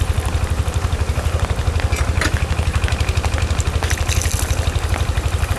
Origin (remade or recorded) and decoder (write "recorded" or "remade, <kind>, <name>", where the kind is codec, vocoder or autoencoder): recorded